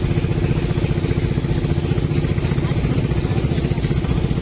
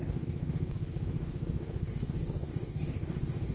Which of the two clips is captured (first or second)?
first